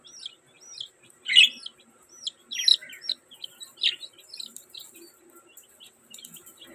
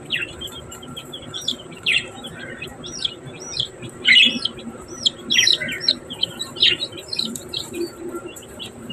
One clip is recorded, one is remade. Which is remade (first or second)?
second